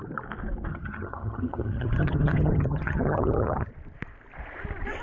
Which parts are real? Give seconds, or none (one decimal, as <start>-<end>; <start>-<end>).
0.0-0.7; 3.7-5.0